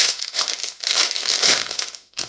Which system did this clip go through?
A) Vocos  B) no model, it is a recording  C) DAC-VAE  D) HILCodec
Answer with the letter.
C